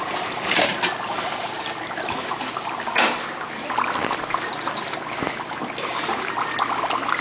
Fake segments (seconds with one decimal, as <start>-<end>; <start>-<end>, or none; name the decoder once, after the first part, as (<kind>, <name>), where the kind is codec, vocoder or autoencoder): none